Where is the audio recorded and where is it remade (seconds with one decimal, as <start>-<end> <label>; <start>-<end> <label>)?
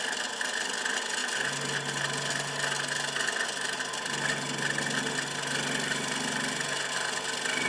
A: 0.0-7.7 recorded